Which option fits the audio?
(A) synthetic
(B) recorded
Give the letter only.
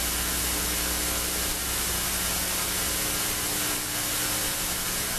B